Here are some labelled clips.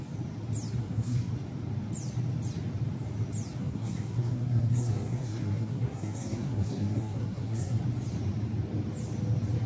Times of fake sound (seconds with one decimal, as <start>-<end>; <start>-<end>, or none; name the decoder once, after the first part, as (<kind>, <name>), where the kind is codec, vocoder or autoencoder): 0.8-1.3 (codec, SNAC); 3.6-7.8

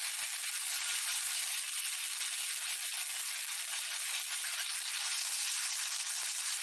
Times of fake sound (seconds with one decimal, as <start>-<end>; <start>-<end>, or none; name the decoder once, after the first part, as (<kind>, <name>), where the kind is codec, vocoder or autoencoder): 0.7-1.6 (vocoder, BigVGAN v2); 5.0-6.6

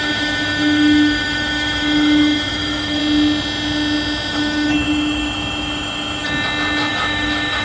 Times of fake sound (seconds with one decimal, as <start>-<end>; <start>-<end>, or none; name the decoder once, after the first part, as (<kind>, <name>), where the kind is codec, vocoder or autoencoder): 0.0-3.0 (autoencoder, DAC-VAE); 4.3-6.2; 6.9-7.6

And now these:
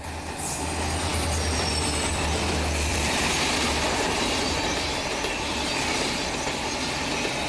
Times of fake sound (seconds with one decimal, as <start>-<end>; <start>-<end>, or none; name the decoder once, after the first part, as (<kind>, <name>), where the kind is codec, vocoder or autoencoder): 1.1-2.5 (vocoder, BigVGAN v2); 2.9-6.1

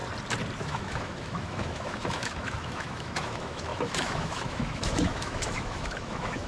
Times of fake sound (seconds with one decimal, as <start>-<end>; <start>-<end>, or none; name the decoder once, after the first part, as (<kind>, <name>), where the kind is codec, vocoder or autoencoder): 0.6-6.5 (autoencoder, DAC-VAE)

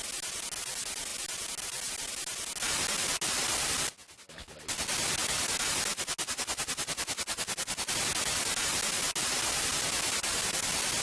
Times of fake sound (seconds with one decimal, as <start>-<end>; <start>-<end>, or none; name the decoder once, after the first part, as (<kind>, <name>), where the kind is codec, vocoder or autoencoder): none

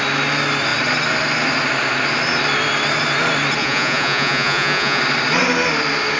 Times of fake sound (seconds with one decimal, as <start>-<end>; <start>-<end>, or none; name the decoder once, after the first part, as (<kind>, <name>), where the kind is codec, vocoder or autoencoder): 3.6-5.0 (vocoder, Vocos)

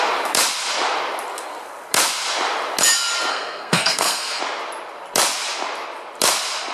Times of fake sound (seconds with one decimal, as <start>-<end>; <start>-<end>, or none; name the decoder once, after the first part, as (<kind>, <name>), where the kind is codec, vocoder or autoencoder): 3.3-4.4 (codec, SNAC)